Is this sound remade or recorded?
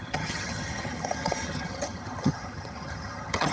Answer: remade